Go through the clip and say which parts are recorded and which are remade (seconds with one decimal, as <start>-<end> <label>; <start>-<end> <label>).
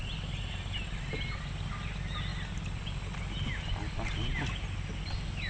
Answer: 0.0-5.5 recorded